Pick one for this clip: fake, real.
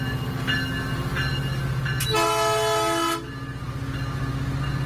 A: real